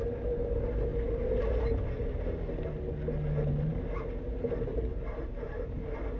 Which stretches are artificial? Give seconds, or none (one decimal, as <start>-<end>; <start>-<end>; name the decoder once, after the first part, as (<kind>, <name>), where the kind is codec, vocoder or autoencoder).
none